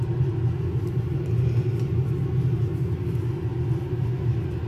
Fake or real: real